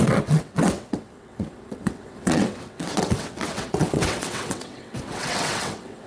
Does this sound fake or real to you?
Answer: fake